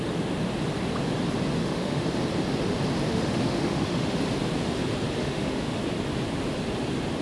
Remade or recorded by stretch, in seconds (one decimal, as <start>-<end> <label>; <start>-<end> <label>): 0.0-1.6 recorded; 1.6-2.1 remade; 2.1-3.1 recorded; 3.1-4.2 remade; 4.2-5.2 recorded; 5.2-5.8 remade; 5.8-7.2 recorded